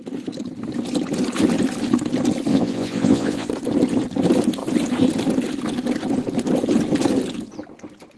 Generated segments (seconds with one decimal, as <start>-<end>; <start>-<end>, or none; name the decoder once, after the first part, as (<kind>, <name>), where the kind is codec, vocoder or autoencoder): 2.5-3.5 (vocoder, Vocos)